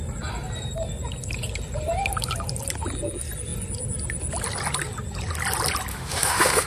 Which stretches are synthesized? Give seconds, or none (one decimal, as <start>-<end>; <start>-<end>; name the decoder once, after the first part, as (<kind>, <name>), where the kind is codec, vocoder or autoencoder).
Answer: 5.9-6.7 (autoencoder, DAC-VAE)